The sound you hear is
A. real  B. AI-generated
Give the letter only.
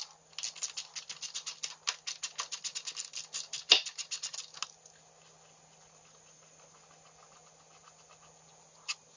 A